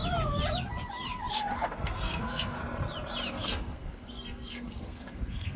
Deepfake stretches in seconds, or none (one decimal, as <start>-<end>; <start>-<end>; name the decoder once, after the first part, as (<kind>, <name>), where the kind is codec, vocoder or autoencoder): 1.3-2.6 (codec, SNAC); 3.3-5.6